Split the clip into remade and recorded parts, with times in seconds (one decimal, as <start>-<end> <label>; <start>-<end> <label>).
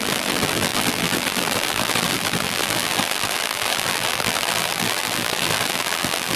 0.0-6.4 remade